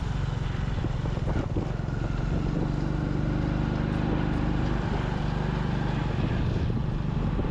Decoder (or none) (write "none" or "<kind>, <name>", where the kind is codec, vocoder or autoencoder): none